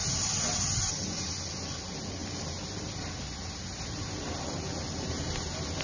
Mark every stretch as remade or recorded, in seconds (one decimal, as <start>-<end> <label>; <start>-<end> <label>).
0.0-5.8 recorded